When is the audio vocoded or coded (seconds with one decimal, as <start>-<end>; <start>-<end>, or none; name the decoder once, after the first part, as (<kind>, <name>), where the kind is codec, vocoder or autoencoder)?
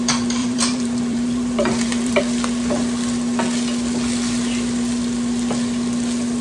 0.4-2.2 (vocoder, BigVGAN v2)